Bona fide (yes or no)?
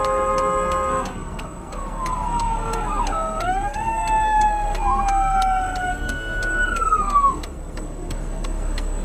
no